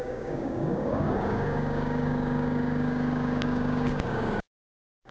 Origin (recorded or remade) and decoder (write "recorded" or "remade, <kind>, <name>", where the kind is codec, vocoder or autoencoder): remade, codec, DAC